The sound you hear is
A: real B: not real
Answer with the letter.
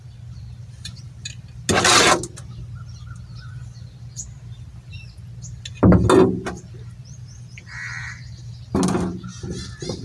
A